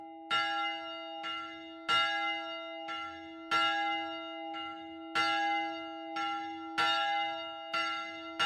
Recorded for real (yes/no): yes